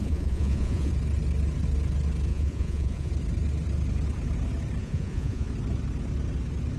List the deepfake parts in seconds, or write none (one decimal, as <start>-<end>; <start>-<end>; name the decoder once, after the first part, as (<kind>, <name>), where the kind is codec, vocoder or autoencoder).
0.0-0.9 (vocoder, Vocos); 2.3-3.1; 4.8-5.5